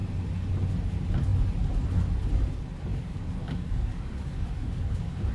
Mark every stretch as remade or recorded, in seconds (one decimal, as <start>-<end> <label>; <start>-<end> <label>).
0.0-2.9 recorded; 2.9-5.3 remade